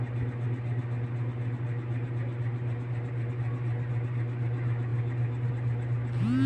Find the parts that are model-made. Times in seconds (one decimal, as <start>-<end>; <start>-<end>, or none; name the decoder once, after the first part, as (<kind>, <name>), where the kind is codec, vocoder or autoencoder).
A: none

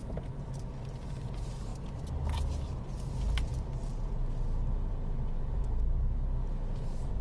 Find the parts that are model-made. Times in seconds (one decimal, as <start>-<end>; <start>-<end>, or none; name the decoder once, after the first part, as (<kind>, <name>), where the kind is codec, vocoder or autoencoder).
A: none

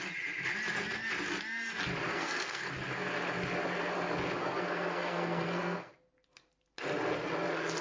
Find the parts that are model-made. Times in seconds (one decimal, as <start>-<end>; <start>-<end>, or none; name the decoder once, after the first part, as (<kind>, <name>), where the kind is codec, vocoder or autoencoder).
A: 2.1-2.7 (codec, SNAC); 4.4-5.9

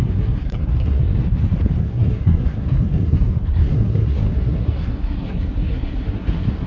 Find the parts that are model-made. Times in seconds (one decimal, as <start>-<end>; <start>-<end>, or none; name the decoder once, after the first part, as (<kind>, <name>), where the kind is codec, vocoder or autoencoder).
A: 0.0-1.2 (codec, SNAC); 1.8-6.7

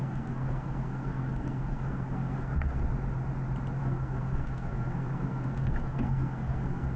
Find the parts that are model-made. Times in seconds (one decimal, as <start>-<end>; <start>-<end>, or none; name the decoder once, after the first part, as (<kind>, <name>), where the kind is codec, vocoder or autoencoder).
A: 0.0-2.8 (codec, SNAC); 3.8-7.0

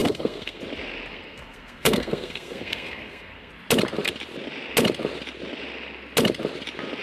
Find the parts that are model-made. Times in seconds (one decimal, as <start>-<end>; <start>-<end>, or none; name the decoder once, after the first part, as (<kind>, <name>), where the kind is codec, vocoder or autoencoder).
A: 0.0-0.6 (codec, SNAC); 1.1-3.5